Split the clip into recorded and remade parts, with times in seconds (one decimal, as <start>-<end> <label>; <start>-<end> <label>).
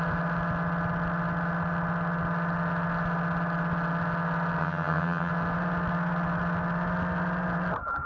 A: 0.0-4.6 recorded; 4.6-5.3 remade; 5.3-8.1 recorded